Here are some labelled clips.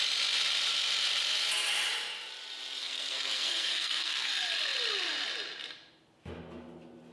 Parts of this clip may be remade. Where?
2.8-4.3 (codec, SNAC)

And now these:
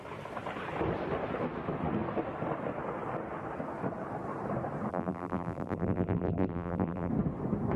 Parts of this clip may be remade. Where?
4.9-7.1 (vocoder, BigVGAN v2)

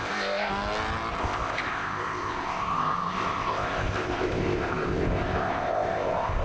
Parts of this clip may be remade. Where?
0.0-0.5 (codec, ZipCodec); 1.2-6.4

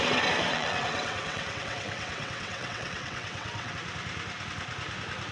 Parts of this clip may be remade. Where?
0.5-3.7 (vocoder, WaveNeXt)

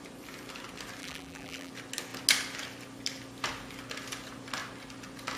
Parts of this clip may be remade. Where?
1.0-1.7 (vocoder, BigVGAN v2)

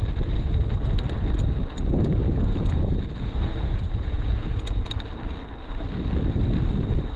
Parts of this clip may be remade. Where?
2.2-4.9 (vocoder, Vocos)

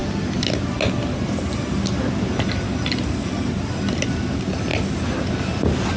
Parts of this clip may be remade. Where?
none

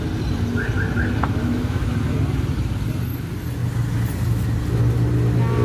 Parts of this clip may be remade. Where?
1.4-1.9 (autoencoder, DAC-VAE)